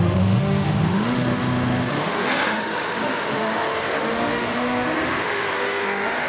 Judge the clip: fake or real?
fake